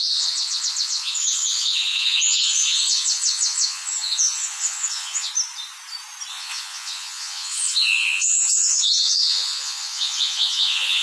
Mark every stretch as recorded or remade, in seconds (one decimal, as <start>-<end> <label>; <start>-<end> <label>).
0.0-5.3 remade; 5.3-6.3 recorded; 6.3-11.0 remade